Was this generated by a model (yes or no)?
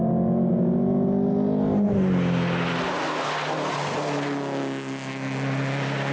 no